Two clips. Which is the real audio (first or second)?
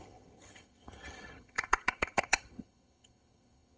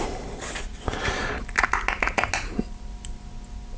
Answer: second